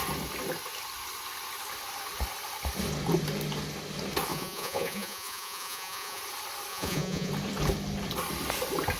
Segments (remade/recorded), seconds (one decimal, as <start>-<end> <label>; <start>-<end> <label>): 0.0-4.3 recorded; 4.3-6.2 remade; 6.2-6.7 recorded; 6.7-7.3 remade; 7.3-9.0 recorded